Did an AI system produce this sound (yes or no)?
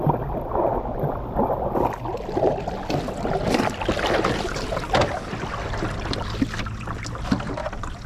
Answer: no